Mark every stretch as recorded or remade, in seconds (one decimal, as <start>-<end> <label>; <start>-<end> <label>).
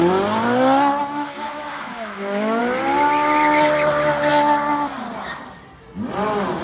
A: 0.0-1.0 recorded; 1.0-2.6 remade; 2.6-6.6 recorded